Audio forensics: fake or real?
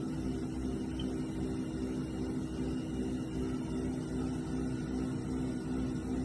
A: real